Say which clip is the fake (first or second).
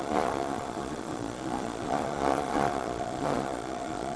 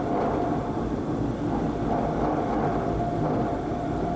first